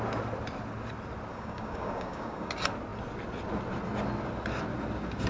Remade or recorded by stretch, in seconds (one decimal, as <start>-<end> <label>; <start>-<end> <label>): 0.0-1.3 recorded; 1.3-2.5 remade; 2.5-5.3 recorded